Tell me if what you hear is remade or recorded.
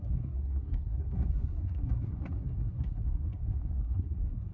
remade